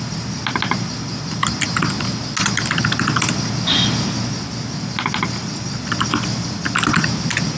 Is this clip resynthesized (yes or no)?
no